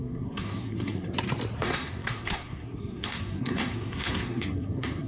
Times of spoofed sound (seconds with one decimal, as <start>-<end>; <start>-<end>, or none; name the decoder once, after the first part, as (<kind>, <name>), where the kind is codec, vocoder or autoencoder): 0.0-1.1 (codec, SNAC); 1.6-5.1